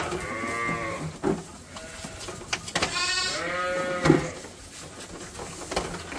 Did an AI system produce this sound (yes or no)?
no